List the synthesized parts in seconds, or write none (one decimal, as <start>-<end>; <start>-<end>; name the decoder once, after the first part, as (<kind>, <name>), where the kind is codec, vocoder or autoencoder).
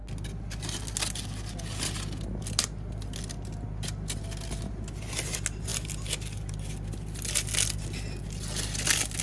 none